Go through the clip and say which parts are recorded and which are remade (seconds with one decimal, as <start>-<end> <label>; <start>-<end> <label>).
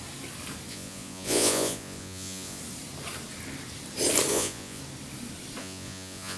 0.0-0.7 recorded; 0.7-2.6 remade; 2.6-4.3 recorded; 4.3-4.8 remade; 4.8-5.6 recorded; 5.6-6.4 remade